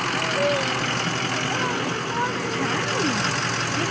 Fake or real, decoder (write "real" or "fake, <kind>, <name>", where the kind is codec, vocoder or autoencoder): real